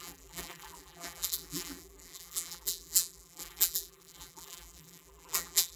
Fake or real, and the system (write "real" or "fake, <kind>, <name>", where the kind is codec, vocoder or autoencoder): fake, vocoder, BigVGAN v2